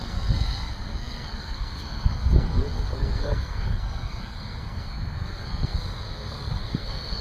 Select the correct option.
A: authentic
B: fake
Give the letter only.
B